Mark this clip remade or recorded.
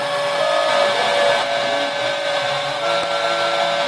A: recorded